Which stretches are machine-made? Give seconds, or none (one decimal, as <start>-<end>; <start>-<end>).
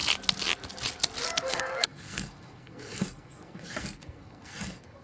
1.5-5.0